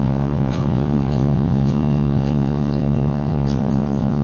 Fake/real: fake